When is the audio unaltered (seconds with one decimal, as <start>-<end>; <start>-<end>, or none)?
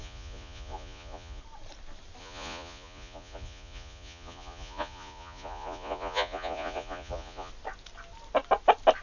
1.4-2.2; 7.5-9.0